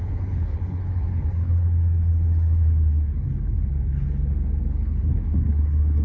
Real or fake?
fake